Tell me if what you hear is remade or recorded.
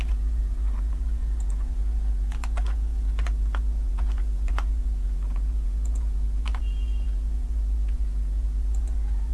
remade